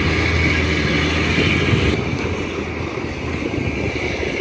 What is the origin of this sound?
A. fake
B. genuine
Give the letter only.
B